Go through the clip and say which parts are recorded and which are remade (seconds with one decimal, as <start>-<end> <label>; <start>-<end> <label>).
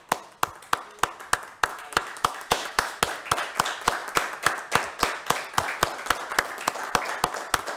0.0-1.7 recorded; 1.7-3.0 remade; 3.0-7.8 recorded